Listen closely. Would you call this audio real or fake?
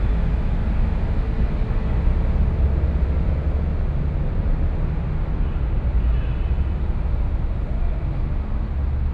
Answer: real